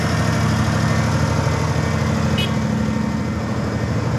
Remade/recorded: recorded